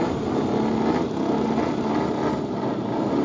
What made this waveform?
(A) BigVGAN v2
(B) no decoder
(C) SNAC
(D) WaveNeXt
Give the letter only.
B